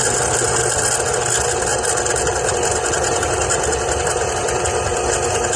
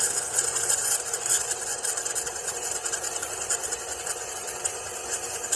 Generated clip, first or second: second